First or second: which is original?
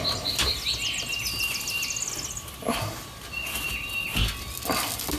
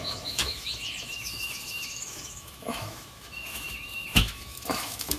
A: first